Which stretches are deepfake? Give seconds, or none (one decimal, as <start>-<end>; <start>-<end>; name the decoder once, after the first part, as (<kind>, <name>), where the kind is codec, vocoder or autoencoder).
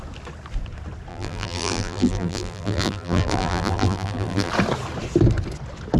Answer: 1.1-4.5 (vocoder, BigVGAN v2)